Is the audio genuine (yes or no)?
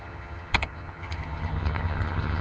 no